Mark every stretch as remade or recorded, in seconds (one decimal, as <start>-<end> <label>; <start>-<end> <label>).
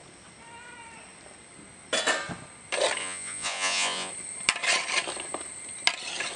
0.0-3.0 recorded; 3.0-4.1 remade; 4.1-6.4 recorded